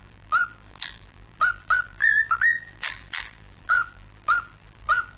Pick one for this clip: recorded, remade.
remade